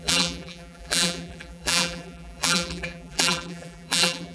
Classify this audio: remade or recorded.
remade